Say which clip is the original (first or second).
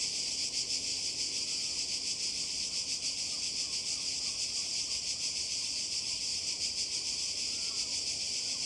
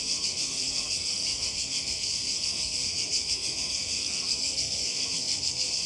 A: first